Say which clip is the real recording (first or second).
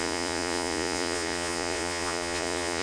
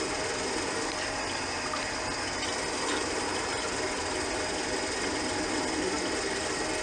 second